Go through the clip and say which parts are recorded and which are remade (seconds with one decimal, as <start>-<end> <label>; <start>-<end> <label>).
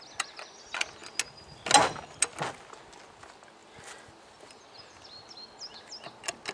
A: 0.0-6.5 recorded